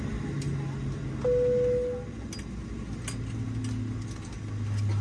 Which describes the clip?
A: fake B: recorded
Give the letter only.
B